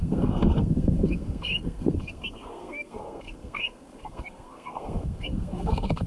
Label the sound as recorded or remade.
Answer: remade